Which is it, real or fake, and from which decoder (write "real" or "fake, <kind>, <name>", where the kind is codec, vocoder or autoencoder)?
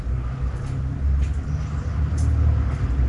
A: real